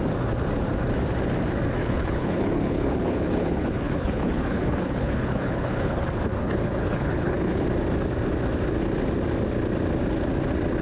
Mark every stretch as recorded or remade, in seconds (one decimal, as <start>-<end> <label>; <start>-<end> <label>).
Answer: 0.0-1.8 recorded; 1.8-6.0 remade; 6.0-6.4 recorded; 6.4-7.6 remade; 7.6-10.8 recorded